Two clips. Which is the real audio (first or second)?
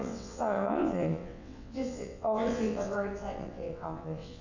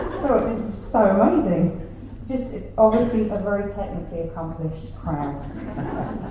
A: second